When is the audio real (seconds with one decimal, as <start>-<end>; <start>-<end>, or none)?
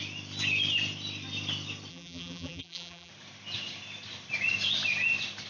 0.0-1.9; 3.1-5.5